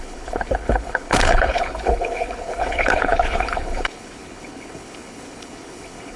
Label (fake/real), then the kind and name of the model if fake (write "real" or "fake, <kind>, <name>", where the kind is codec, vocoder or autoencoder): fake, codec, HILCodec